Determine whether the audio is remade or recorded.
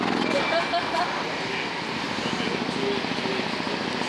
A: recorded